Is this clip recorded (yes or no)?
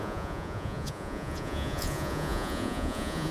no